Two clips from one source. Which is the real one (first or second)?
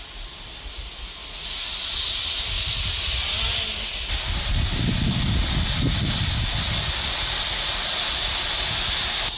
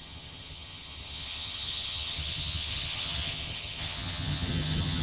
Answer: first